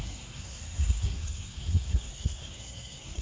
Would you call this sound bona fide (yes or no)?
no